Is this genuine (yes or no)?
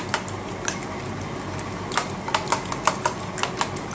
yes